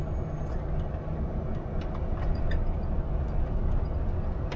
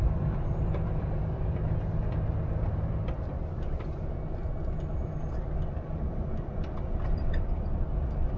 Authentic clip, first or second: first